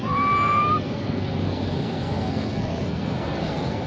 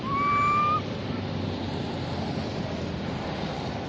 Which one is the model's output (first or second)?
first